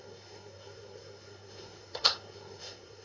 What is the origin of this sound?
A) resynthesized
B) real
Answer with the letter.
A